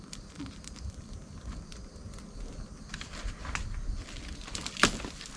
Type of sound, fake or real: real